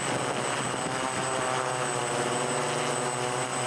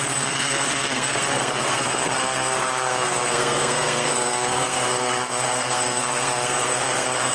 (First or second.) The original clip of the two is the first